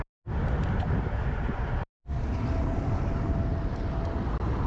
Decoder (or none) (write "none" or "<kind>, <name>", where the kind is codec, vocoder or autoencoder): none